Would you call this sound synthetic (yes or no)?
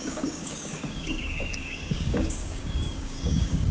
yes